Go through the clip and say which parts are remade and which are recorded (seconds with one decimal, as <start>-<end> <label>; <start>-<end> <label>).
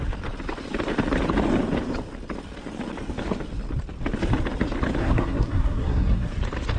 0.0-5.0 recorded; 5.0-6.3 remade; 6.3-6.8 recorded